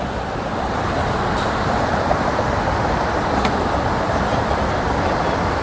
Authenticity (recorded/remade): recorded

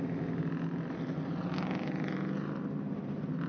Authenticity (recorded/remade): recorded